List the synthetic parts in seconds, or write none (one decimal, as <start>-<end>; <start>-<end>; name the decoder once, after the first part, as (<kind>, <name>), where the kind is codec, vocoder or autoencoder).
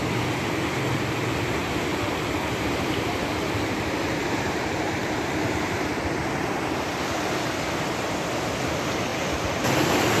1.9-6.0 (vocoder, BigVGAN v2); 9.1-9.6